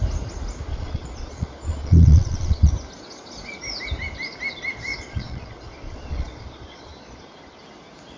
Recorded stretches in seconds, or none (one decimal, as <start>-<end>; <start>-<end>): 0.0-0.7; 2.7-4.9; 7.2-8.2